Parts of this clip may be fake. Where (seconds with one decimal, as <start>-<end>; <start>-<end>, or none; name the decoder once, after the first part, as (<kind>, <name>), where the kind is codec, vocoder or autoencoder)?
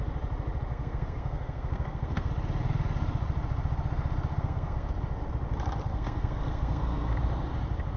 0.7-2.3 (codec, SNAC); 4.3-4.9; 5.8-7.2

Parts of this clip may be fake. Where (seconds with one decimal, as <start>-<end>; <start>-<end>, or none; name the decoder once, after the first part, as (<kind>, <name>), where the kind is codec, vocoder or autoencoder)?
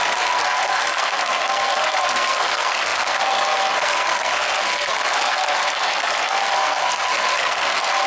0.0-8.1 (codec, SNAC)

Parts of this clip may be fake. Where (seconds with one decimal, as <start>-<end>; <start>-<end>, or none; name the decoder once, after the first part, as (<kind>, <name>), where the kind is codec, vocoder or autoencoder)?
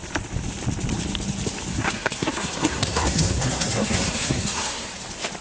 1.7-4.9 (codec, SNAC)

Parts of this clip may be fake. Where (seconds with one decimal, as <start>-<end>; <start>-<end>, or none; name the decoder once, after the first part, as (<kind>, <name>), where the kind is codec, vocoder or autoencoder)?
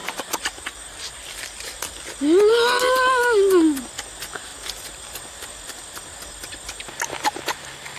none